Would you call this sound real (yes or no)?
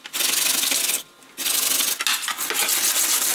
yes